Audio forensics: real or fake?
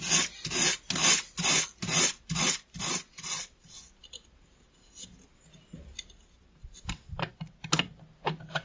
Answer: real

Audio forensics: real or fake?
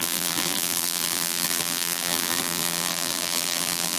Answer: fake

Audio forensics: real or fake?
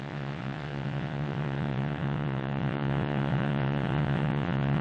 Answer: fake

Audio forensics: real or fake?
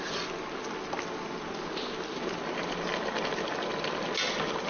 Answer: real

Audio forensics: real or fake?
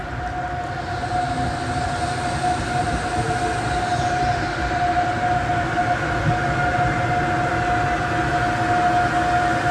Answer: real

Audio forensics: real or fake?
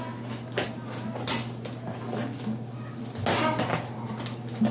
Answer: real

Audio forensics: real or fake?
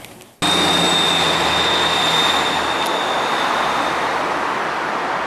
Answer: real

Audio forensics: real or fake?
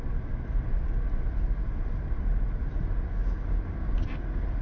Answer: real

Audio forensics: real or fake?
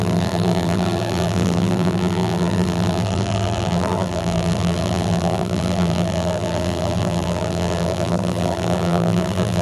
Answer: fake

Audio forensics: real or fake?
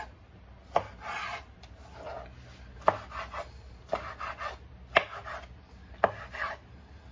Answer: real